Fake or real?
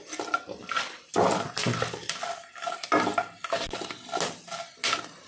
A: real